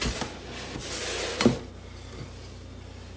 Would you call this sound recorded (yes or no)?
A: yes